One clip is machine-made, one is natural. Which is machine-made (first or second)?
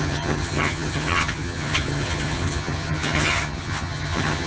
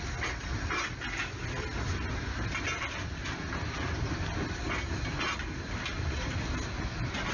first